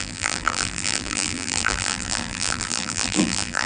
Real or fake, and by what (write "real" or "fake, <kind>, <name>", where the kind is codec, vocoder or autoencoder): fake, vocoder, BigVGAN v2